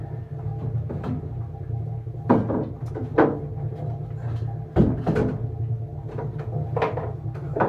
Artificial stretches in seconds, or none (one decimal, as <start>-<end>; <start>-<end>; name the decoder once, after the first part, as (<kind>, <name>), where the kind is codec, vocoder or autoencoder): none